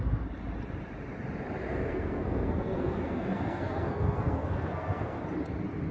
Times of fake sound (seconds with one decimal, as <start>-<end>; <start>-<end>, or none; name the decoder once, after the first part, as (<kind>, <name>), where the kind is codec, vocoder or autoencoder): 1.7-5.2 (codec, SNAC)